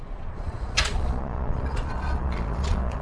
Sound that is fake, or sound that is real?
fake